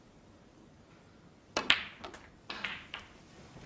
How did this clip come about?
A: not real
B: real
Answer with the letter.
B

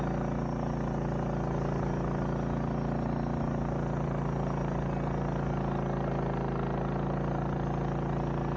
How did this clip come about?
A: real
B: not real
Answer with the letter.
A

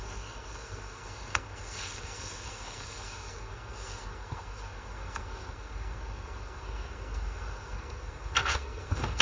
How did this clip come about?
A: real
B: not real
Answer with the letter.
B